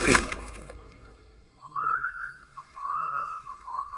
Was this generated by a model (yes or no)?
yes